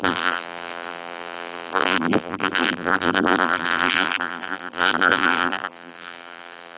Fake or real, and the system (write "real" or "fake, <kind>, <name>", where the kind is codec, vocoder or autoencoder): fake, vocoder, BigVGAN v2